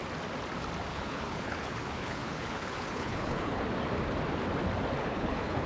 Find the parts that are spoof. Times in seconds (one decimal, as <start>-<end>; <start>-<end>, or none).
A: 0.9-3.6; 5.0-5.7